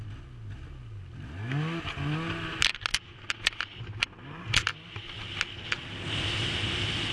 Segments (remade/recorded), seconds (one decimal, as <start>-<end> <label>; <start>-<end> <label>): 0.0-7.1 recorded